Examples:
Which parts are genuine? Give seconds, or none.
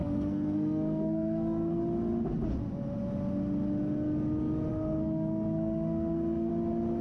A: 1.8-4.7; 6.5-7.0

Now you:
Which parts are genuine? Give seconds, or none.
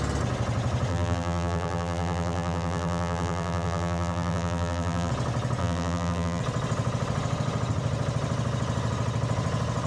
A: 0.0-0.9; 5.1-5.6; 6.4-9.9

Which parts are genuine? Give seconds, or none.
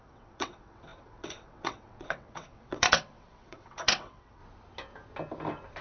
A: 4.4-5.8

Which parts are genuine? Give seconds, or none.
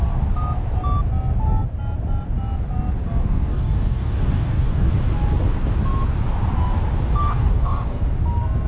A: 0.0-3.2; 4.9-7.2; 8.0-8.7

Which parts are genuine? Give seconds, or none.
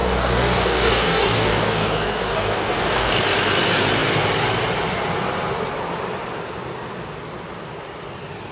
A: 3.1-8.5